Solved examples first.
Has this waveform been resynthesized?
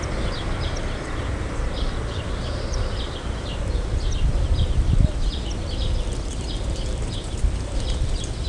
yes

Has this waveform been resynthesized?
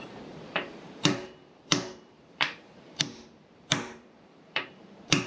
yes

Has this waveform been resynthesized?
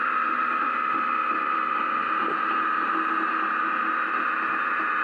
no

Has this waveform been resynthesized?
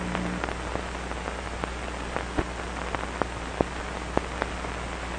no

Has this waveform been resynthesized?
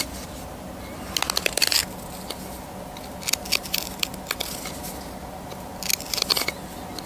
no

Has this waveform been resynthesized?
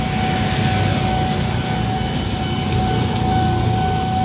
no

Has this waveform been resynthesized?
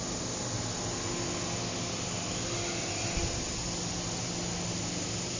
no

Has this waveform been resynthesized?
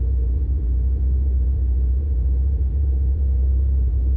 yes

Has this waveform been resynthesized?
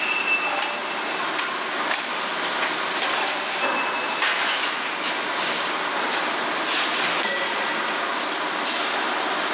no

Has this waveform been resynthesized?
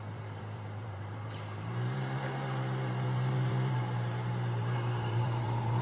yes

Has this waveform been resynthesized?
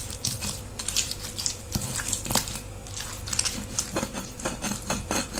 no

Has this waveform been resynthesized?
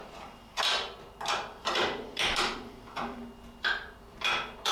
yes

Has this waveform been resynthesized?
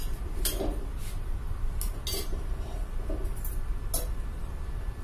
no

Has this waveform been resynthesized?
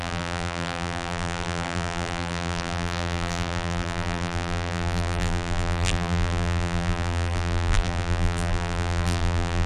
yes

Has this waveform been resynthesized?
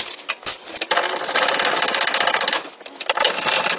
no